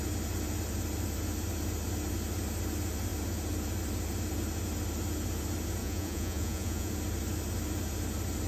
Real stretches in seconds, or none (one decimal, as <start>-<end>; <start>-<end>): 0.0-5.8; 6.9-8.5